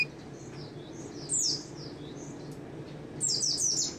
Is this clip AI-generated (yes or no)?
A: no